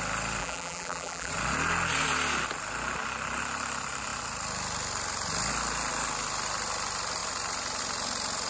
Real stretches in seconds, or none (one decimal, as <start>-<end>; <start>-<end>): 0.0-0.4; 1.3-8.5